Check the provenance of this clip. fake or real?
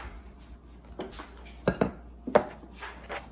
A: real